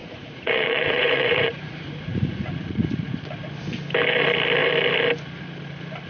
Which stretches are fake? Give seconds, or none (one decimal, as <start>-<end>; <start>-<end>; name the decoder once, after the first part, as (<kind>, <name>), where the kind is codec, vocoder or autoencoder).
0.0-3.2 (vocoder, Vocos)